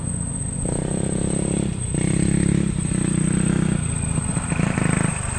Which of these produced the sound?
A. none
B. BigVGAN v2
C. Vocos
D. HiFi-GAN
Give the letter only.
A